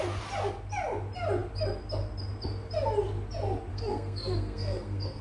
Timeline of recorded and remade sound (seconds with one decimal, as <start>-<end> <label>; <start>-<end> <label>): 0.0-3.7 recorded; 3.7-5.2 remade